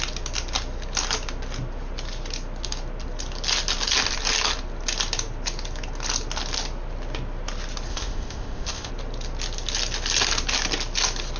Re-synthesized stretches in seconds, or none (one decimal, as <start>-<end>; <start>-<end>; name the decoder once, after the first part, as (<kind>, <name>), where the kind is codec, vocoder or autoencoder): 7.9-8.9 (codec, ZipCodec)